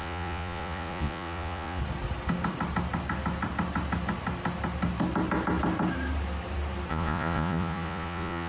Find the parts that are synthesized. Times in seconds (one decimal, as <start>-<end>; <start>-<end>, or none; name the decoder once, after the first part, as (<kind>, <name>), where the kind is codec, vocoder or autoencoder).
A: 0.0-1.8 (vocoder, Vocos); 6.9-8.5